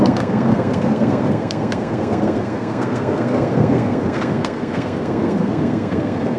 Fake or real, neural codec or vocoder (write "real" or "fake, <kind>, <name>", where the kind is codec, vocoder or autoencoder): fake, codec, SNAC